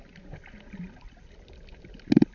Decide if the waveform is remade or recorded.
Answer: recorded